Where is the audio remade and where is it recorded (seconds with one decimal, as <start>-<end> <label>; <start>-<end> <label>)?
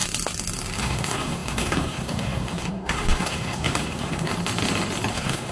0.0-0.8 recorded; 0.8-4.3 remade; 4.3-5.1 recorded; 5.1-5.5 remade